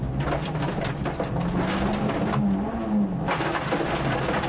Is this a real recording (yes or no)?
yes